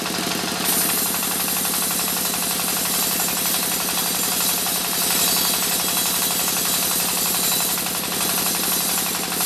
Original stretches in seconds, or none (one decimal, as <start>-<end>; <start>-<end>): 0.0-9.5